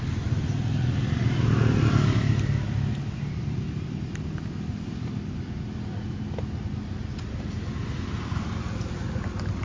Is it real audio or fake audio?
real